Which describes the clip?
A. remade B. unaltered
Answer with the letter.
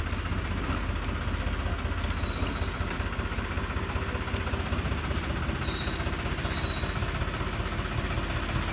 B